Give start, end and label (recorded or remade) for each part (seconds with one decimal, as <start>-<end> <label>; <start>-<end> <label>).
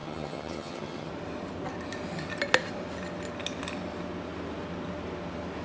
0.0-1.1 remade; 1.1-5.6 recorded